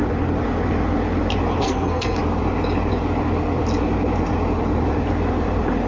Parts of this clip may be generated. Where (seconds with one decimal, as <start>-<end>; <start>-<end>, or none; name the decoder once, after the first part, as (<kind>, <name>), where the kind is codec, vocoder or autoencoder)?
1.6-2.2 (codec, SNAC)